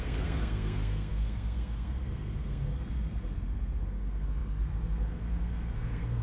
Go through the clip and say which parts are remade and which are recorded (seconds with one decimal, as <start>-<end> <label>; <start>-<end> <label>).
0.0-6.2 remade

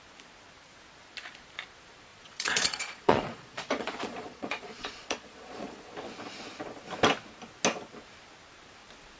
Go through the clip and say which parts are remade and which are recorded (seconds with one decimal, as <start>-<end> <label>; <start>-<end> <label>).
0.0-2.1 recorded; 2.1-5.8 remade; 5.8-9.2 recorded